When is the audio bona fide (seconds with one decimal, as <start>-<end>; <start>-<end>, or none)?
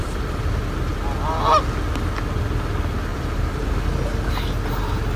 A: 0.6-3.1; 3.8-5.2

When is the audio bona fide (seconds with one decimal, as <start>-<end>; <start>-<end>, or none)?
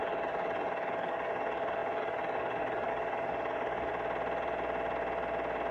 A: 3.9-5.7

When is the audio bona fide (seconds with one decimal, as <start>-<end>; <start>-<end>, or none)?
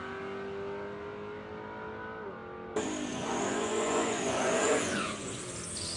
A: 0.0-3.1; 5.4-6.0